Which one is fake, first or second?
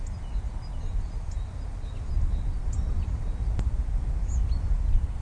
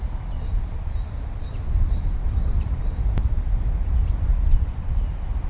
second